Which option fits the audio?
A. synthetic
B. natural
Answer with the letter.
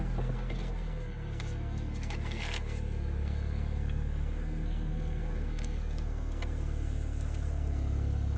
A